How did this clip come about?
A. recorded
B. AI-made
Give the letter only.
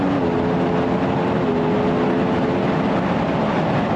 A